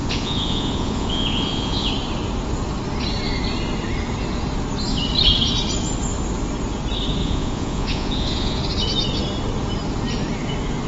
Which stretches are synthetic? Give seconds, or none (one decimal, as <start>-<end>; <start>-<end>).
0.0-1.9; 7.2-8.6